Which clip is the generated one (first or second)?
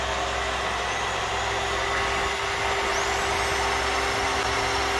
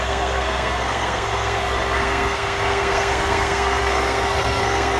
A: second